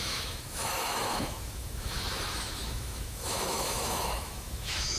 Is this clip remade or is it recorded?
remade